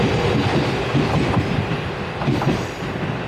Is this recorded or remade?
recorded